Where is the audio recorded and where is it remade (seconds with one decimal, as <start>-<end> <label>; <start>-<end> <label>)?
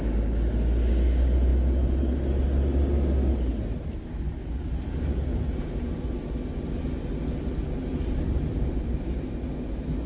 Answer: 0.0-10.1 recorded